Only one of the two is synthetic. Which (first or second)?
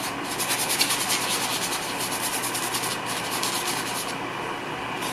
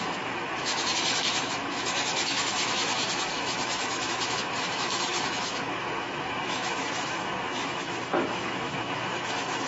second